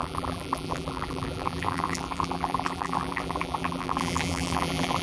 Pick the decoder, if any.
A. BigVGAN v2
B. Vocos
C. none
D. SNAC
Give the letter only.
A